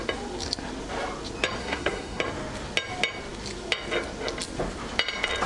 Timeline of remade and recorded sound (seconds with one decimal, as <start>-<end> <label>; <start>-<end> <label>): 0.0-1.6 recorded; 1.6-2.2 remade; 2.2-5.5 recorded